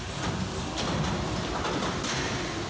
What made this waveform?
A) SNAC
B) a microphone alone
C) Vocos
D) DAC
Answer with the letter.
B